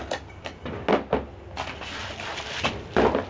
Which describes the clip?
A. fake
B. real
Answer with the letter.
B